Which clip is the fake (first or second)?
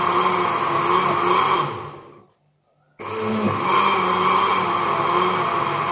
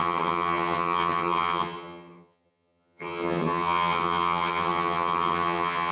second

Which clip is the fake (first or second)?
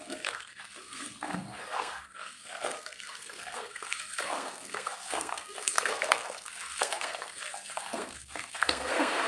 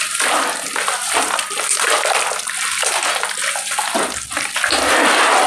first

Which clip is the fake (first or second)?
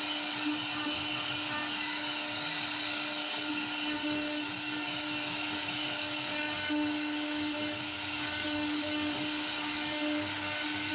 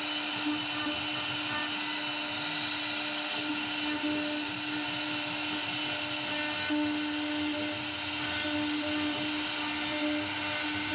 first